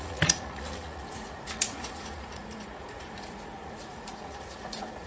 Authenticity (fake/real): fake